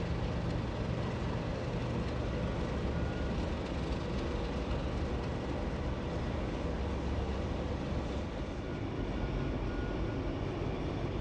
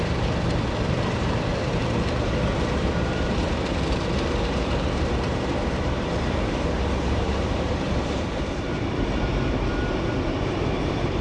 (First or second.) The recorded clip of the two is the first